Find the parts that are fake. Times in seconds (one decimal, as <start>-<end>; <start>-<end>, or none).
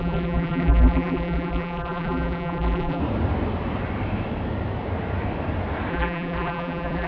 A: 0.0-3.0; 5.9-7.1